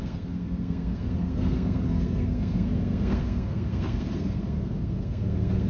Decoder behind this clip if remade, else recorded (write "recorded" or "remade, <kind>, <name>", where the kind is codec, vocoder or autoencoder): remade, codec, SNAC